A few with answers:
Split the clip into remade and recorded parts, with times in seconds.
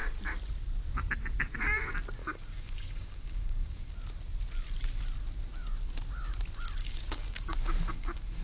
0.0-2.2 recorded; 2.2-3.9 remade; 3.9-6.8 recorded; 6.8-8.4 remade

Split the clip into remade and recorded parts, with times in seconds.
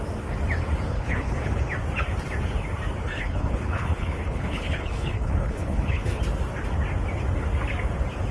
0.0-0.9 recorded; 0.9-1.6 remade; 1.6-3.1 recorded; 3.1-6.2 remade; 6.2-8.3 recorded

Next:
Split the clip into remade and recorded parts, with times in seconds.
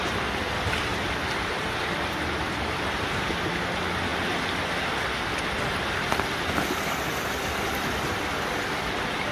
0.0-0.9 recorded; 0.9-3.3 remade; 3.3-9.3 recorded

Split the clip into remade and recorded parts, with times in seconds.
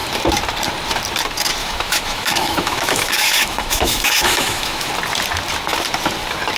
0.0-1.6 recorded; 1.6-4.9 remade; 4.9-6.6 recorded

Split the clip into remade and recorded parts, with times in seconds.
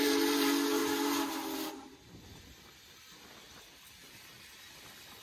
0.0-5.2 recorded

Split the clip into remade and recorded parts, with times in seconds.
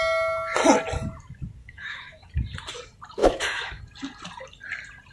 0.0-1.6 recorded; 1.6-2.3 remade; 2.3-3.2 recorded; 3.2-3.8 remade; 3.8-5.1 recorded